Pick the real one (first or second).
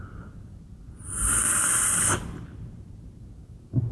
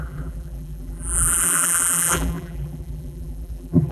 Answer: first